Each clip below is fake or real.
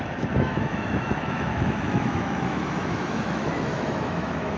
fake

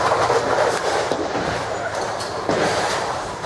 fake